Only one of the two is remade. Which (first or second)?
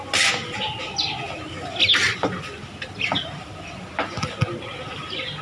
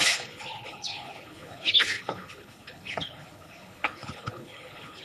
second